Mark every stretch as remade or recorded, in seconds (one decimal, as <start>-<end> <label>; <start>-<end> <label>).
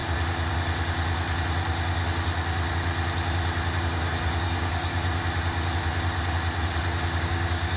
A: 0.0-3.8 recorded; 3.8-4.9 remade; 4.9-7.2 recorded; 7.2-7.8 remade